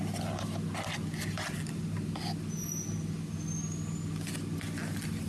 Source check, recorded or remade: recorded